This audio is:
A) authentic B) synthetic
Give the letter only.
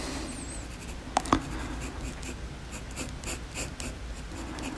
A